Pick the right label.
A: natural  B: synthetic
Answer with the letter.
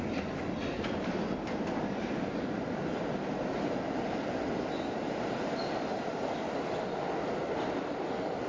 A